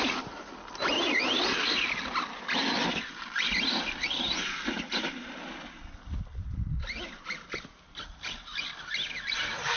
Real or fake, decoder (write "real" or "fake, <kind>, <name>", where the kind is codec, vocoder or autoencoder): real